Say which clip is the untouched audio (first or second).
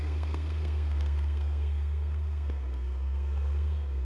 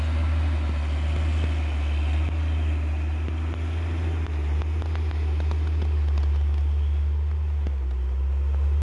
second